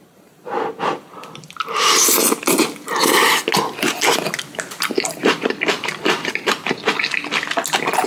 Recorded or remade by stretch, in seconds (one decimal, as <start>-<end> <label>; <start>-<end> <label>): 0.0-5.2 recorded; 5.2-6.8 remade; 6.8-8.1 recorded